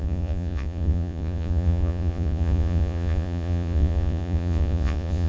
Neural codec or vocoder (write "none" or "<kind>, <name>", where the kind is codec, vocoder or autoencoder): vocoder, Vocos